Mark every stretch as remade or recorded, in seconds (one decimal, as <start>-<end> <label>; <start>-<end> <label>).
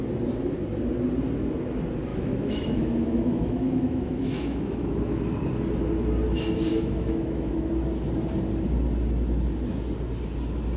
0.0-2.1 recorded; 2.1-5.2 remade; 5.2-6.7 recorded; 6.7-7.7 remade; 7.7-10.8 recorded